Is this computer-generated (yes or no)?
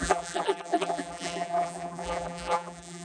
yes